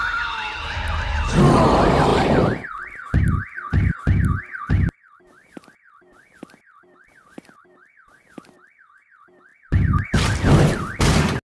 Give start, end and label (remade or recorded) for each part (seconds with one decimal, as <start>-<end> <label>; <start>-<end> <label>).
0.0-2.1 recorded; 2.1-3.2 remade; 3.2-9.5 recorded; 9.5-10.6 remade; 10.6-11.5 recorded

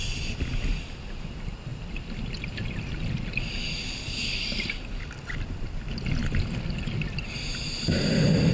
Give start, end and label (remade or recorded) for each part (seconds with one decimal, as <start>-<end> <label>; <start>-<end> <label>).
0.0-8.5 recorded

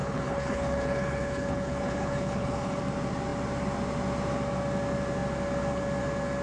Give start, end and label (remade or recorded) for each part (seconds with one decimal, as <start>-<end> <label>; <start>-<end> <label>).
0.0-2.8 remade; 2.8-6.4 recorded

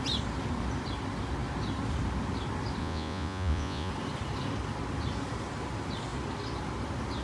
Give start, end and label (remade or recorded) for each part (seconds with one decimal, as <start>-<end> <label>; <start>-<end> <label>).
0.0-2.8 recorded; 2.8-3.9 remade; 3.9-7.2 recorded

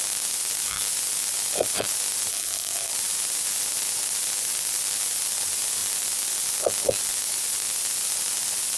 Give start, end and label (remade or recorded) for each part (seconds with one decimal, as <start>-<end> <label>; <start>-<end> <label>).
0.0-2.3 recorded; 2.3-2.9 remade; 2.9-8.8 recorded

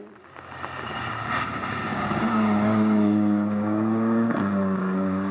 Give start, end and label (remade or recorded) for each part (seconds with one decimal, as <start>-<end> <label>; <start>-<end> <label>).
0.0-1.9 recorded; 1.9-5.3 remade

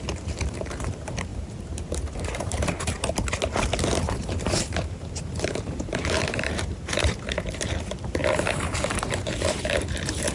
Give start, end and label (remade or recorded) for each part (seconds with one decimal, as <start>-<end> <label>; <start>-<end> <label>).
0.0-10.3 remade

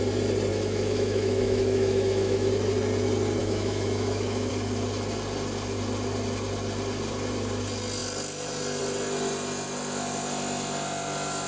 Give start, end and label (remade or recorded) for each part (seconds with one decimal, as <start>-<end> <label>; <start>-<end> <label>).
0.0-0.5 recorded; 0.5-2.5 remade; 2.5-3.4 recorded; 3.4-4.5 remade; 4.5-11.5 recorded